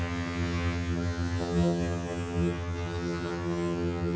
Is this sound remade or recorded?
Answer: remade